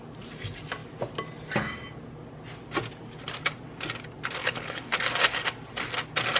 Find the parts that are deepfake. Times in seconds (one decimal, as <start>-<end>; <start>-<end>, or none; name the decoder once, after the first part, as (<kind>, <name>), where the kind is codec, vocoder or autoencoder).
4.4-5.0 (codec, HILCodec)